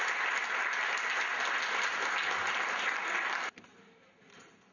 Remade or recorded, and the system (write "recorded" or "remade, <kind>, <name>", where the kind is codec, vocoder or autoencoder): recorded